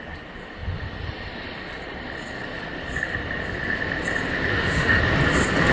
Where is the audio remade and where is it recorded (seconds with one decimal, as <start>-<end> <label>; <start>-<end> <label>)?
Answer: 0.0-4.5 recorded; 4.5-5.0 remade; 5.0-5.7 recorded